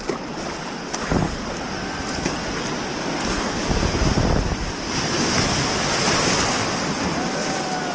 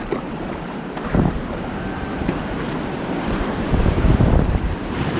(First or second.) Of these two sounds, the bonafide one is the first